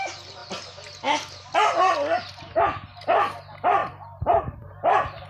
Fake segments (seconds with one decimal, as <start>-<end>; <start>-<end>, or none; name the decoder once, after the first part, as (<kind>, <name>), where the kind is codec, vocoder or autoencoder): none